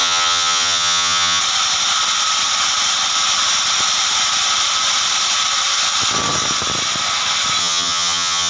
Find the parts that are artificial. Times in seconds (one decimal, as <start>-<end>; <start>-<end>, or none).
0.0-1.4; 7.6-8.5